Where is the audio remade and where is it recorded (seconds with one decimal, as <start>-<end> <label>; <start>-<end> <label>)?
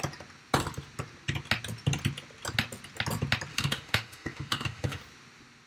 0.0-3.5 recorded; 3.5-5.0 remade; 5.0-5.7 recorded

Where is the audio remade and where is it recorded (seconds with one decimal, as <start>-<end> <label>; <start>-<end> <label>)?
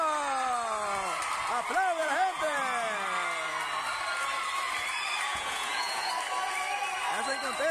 0.0-2.0 recorded; 2.0-2.6 remade; 2.6-5.3 recorded; 5.3-6.1 remade; 6.1-7.7 recorded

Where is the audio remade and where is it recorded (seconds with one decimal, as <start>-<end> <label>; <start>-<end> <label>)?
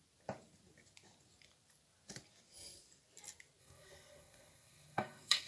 0.0-3.6 recorded; 3.6-5.5 remade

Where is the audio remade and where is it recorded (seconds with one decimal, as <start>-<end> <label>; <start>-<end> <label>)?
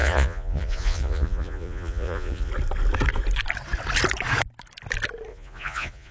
0.0-2.5 remade; 2.5-5.3 recorded; 5.3-6.1 remade